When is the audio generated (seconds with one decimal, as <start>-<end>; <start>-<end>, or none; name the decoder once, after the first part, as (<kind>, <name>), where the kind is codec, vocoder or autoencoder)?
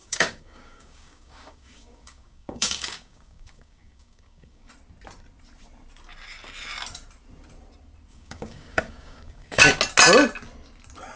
0.0-4.7 (codec, DAC); 8.1-9.6